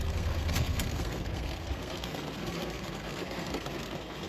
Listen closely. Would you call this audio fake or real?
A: fake